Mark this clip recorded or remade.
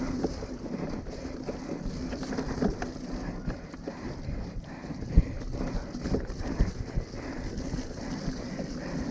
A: recorded